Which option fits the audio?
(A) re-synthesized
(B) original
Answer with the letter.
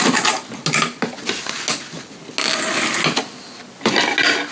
B